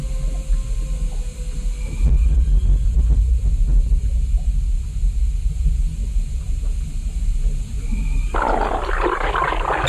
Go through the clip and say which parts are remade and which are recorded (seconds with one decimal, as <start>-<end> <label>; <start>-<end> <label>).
0.0-9.9 recorded